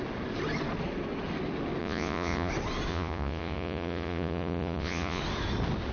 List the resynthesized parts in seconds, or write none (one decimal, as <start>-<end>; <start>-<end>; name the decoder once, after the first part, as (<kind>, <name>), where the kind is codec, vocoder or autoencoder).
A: 1.8-2.5 (vocoder, Vocos); 2.9-5.2